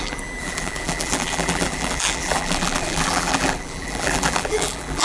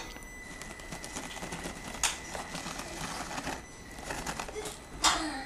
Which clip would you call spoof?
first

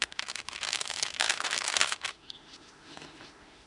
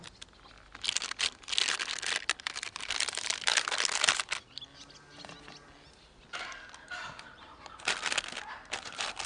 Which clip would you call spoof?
first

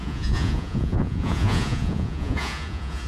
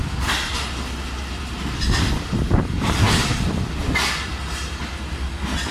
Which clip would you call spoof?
first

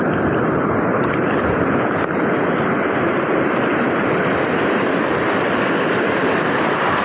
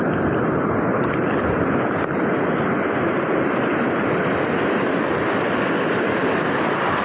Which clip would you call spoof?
first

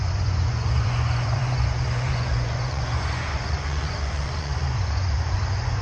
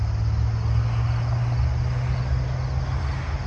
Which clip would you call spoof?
first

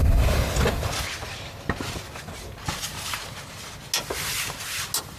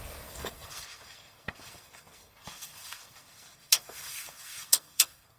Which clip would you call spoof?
second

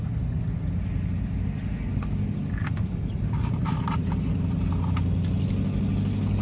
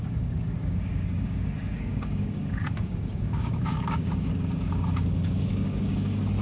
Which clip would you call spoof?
second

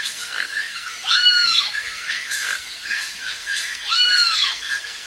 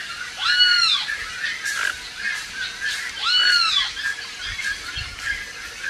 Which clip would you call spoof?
first